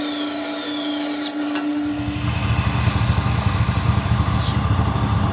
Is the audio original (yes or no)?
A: yes